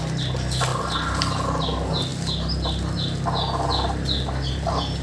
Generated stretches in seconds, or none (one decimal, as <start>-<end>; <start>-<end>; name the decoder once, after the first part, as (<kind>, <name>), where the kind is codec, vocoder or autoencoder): none